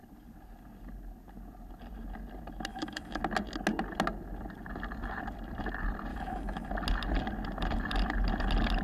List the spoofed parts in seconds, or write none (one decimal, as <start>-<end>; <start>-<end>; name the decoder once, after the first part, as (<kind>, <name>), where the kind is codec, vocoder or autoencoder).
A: 2.7-3.2 (autoencoder, DAC-VAE); 6.1-6.7